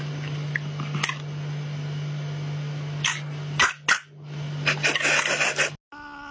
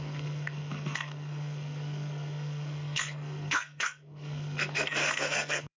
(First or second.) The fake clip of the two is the second